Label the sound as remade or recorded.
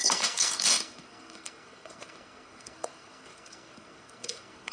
remade